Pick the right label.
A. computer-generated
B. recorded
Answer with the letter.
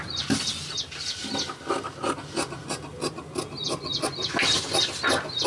B